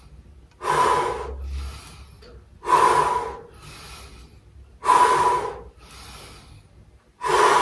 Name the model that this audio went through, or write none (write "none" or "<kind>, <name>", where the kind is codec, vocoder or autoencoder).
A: none